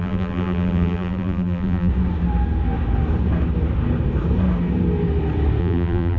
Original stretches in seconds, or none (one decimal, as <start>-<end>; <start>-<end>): 1.9-5.6